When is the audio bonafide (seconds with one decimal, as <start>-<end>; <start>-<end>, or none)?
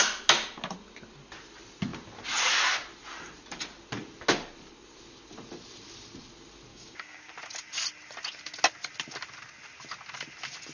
0.0-6.7; 7.3-10.7